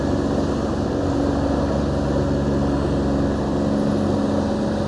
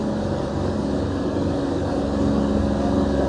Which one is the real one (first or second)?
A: first